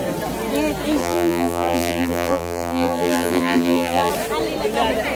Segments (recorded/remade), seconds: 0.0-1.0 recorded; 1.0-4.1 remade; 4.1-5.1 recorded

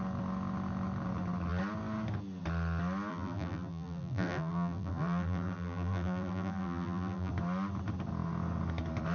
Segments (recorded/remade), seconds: 0.0-3.1 recorded; 3.1-7.3 remade; 7.3-9.1 recorded

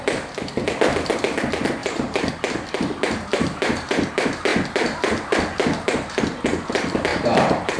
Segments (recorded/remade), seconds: 0.0-1.8 recorded; 1.8-2.3 remade; 2.3-3.3 recorded; 3.3-4.1 remade; 4.1-7.1 recorded; 7.1-7.8 remade

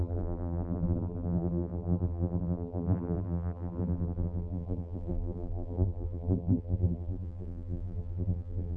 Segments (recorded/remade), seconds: 0.0-8.8 remade